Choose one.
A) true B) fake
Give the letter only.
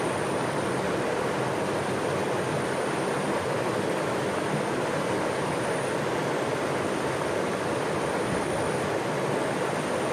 A